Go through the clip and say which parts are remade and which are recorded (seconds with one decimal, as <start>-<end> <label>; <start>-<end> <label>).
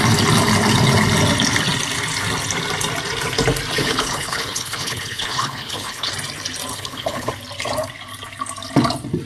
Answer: 0.0-3.8 recorded; 3.8-6.1 remade; 6.1-6.7 recorded; 6.7-7.3 remade; 7.3-9.3 recorded